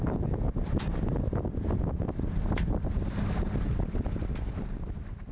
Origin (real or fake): real